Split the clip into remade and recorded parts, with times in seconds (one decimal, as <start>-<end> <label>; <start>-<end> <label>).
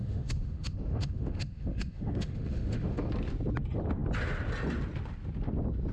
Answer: 0.0-3.1 remade; 3.1-5.9 recorded